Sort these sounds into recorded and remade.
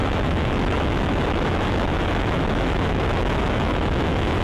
remade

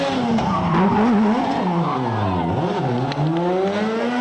recorded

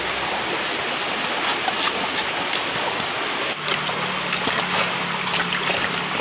recorded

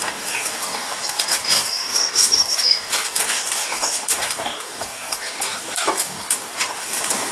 remade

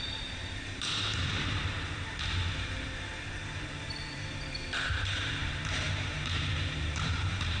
remade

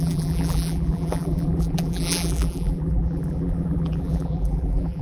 remade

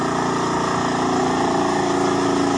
recorded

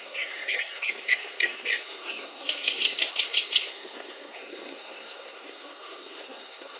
remade